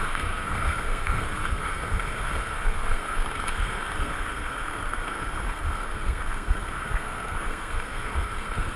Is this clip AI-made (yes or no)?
yes